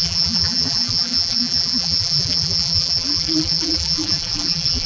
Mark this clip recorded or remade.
remade